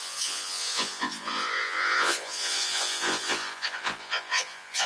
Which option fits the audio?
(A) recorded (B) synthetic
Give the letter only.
B